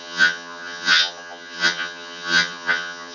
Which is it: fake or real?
fake